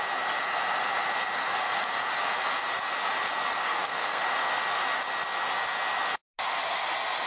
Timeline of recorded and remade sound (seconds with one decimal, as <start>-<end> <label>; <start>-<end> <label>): 0.0-3.6 recorded; 3.6-4.2 remade; 4.2-7.3 recorded